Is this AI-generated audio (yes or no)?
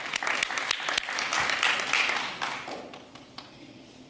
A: no